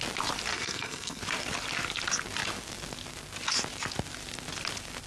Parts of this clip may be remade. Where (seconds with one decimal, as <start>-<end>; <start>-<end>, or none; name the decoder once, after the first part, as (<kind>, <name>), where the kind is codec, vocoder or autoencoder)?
0.5-1.2 (codec, SNAC)